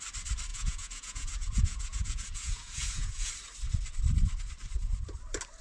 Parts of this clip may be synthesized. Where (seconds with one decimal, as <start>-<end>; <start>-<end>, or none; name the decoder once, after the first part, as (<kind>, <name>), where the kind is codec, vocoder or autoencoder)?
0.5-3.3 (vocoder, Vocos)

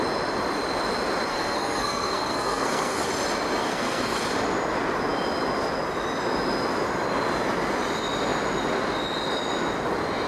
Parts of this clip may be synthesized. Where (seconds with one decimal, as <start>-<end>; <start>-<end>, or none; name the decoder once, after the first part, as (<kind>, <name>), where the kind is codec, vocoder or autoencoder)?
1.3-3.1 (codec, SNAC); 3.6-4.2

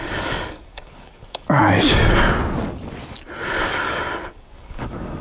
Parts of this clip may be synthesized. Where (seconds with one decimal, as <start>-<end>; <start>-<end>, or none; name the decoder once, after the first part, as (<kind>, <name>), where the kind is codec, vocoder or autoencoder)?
0.0-1.6 (codec, DAC); 3.7-5.2

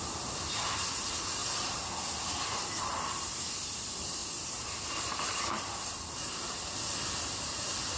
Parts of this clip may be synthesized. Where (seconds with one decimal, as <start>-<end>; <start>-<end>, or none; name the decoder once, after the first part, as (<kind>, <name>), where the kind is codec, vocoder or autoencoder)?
0.0-8.0 (vocoder, BigVGAN v2)

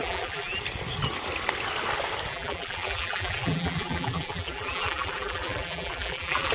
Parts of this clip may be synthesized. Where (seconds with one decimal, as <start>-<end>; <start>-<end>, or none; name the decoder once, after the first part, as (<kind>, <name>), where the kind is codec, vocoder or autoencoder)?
0.0-0.6 (vocoder, BigVGAN v2); 2.3-6.5